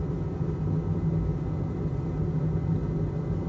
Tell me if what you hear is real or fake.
real